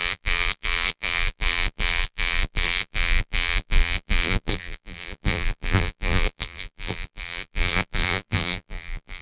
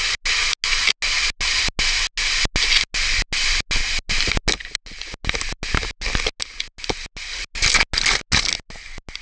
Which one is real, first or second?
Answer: second